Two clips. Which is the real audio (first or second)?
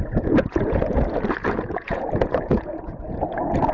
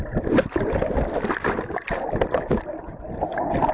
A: second